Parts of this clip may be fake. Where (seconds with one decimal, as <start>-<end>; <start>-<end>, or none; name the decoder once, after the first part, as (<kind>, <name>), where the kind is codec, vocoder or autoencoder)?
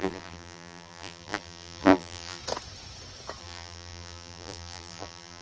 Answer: 0.0-2.4 (vocoder, BigVGAN v2); 3.4-5.4